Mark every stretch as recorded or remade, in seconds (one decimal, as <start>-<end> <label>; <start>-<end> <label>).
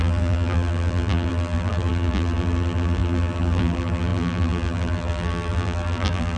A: 0.0-6.4 remade